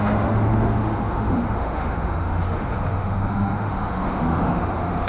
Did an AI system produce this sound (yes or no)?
yes